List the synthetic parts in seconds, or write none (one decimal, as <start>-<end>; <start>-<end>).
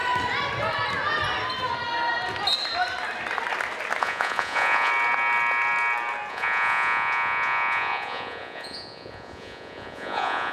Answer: 4.0-4.9; 6.3-10.5